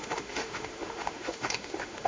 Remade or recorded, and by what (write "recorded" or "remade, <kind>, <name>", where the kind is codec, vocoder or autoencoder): remade, autoencoder, DAC-VAE